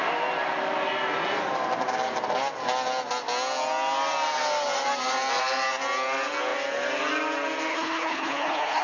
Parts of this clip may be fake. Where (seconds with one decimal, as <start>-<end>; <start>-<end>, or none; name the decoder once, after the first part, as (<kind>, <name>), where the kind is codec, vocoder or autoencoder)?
7.7-8.8 (codec, HILCodec)